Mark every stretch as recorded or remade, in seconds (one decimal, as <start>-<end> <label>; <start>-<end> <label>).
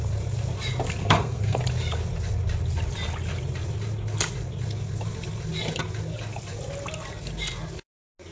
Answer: 0.0-1.0 recorded; 1.0-1.6 remade; 1.6-8.3 recorded